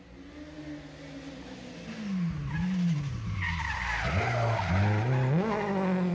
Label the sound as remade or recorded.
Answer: recorded